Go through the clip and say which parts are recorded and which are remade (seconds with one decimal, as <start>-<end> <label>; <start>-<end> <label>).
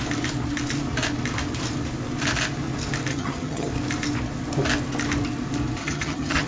0.0-3.1 recorded; 3.1-3.7 remade; 3.7-5.8 recorded; 5.8-6.5 remade